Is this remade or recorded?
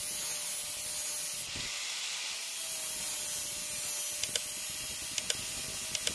recorded